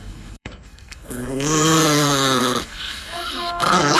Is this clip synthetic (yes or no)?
yes